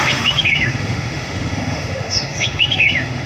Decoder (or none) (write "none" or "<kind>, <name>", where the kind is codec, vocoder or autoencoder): autoencoder, DAC-VAE